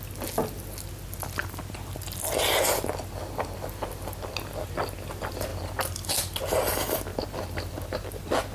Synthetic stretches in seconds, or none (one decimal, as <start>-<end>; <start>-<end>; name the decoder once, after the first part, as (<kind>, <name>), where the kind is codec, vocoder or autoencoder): none